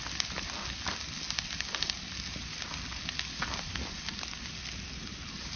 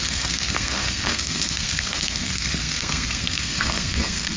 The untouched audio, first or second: first